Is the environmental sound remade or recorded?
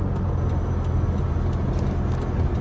recorded